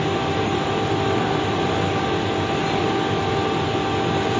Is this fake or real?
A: real